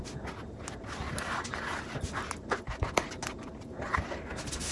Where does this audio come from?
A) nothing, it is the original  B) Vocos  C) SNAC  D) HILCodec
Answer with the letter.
A